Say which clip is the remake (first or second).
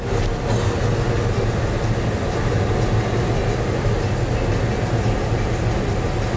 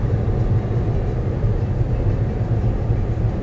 second